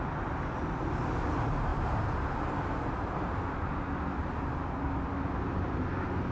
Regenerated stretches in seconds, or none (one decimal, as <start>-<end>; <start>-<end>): none